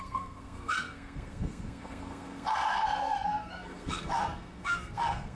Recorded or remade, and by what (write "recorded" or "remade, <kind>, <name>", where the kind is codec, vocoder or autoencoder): remade, codec, SNAC